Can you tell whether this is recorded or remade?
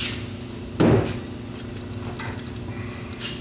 recorded